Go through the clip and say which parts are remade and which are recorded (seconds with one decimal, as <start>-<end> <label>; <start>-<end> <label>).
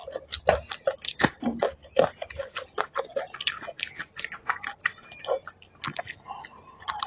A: 0.0-2.4 remade; 2.4-7.1 recorded